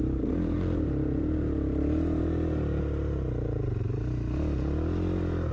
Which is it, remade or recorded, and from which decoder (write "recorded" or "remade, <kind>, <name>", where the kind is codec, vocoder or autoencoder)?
recorded